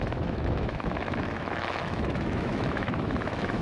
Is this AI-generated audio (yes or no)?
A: yes